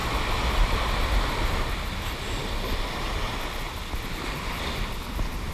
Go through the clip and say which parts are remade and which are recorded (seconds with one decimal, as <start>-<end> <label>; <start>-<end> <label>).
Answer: 0.0-5.5 recorded